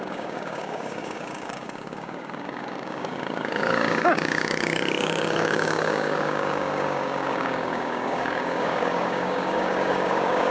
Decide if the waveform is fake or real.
fake